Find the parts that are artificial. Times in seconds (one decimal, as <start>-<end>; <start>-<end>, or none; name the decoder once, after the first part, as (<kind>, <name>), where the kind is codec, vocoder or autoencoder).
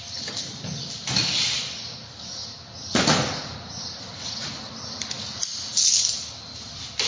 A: none